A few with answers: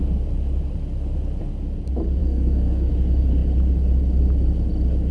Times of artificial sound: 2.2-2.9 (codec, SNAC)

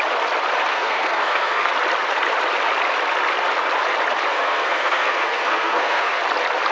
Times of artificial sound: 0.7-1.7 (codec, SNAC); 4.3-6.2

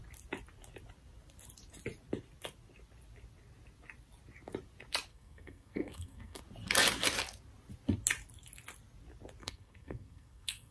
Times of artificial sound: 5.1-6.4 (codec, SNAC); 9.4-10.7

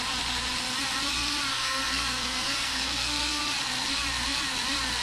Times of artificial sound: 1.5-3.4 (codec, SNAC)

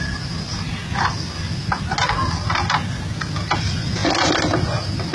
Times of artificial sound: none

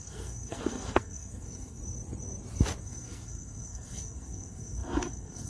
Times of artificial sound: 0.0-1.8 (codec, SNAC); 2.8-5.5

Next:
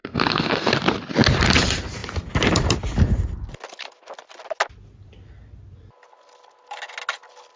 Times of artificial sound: 0.0-0.7 (codec, SNAC)